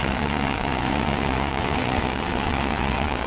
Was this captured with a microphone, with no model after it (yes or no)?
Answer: no